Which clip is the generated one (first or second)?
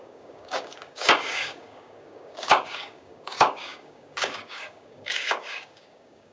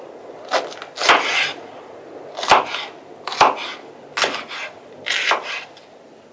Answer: first